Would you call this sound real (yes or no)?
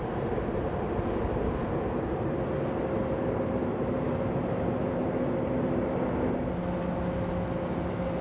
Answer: yes